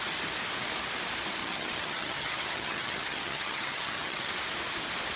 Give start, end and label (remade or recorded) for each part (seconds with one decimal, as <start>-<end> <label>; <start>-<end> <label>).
0.0-1.4 recorded; 1.4-4.3 remade; 4.3-5.2 recorded